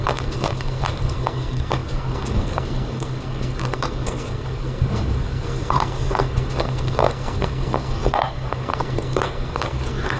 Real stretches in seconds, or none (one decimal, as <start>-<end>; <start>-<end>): none